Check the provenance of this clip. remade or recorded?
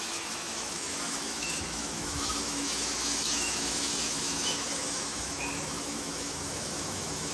remade